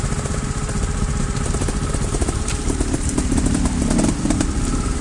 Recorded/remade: remade